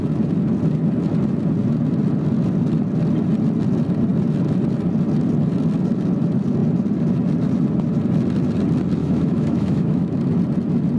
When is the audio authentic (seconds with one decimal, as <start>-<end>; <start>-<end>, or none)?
0.0-9.0; 10.2-11.0